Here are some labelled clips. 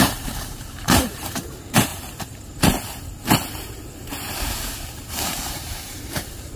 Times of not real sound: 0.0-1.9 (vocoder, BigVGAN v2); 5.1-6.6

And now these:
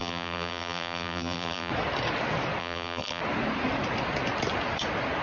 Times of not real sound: 0.0-1.7 (vocoder, BigVGAN v2); 2.6-3.2

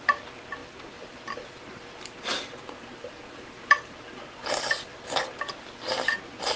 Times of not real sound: 0.6-1.5 (vocoder, BigVGAN v2); 2.3-4.0; 4.9-5.4

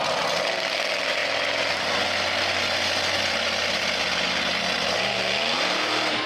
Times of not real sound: none